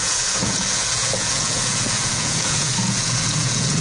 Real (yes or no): no